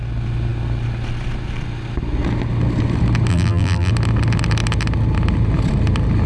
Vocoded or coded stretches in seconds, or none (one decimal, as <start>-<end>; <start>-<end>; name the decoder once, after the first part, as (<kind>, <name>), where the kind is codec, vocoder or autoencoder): 3.3-3.9 (vocoder, BigVGAN v2)